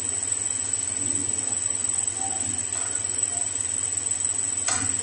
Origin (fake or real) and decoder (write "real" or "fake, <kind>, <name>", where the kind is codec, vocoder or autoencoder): real